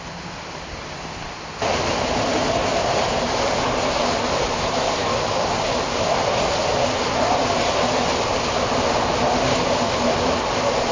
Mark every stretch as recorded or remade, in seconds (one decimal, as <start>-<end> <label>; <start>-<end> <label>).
0.0-10.9 recorded